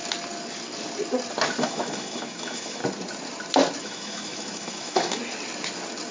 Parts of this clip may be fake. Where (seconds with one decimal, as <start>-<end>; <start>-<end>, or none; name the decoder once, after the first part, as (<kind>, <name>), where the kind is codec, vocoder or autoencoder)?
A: 1.6-2.8 (autoencoder, DAC-VAE); 3.8-5.2